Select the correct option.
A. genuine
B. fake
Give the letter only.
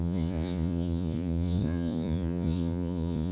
B